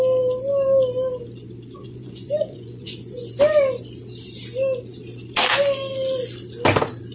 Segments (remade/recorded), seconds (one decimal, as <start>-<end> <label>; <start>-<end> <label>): 0.0-1.8 recorded; 1.8-3.4 remade; 3.4-7.1 recorded